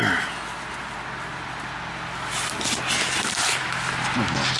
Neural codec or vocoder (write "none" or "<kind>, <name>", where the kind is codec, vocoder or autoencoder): none